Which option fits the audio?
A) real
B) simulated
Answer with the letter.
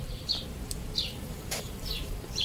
B